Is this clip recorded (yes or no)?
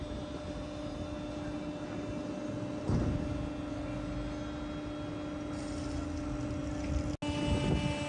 yes